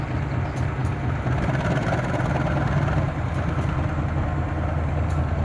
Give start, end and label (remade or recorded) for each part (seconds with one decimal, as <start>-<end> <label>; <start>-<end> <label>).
0.0-5.4 recorded